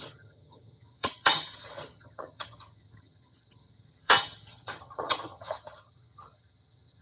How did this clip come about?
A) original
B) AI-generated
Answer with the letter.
B